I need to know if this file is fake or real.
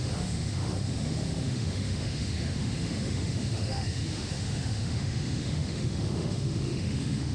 fake